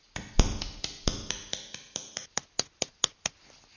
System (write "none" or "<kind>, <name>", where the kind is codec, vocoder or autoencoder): none